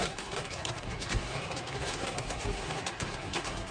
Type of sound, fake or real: fake